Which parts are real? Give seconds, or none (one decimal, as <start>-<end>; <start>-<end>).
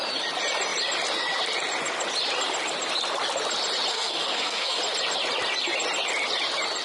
0.0-3.9; 4.8-6.8